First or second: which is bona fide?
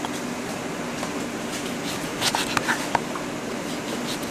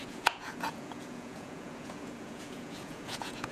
first